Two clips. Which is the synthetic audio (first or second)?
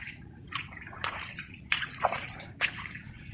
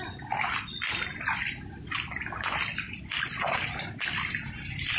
first